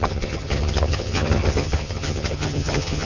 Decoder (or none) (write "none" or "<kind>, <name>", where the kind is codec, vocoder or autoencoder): vocoder, HiFi-GAN